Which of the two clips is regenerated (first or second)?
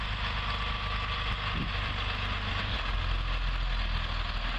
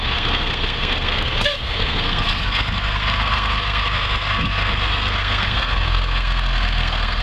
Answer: second